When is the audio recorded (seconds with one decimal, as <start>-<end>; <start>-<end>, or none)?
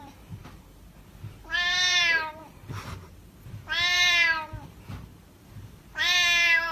none